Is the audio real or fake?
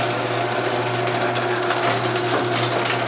real